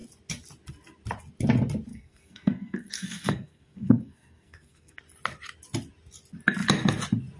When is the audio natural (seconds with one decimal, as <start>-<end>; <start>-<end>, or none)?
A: 0.0-1.9; 5.0-7.4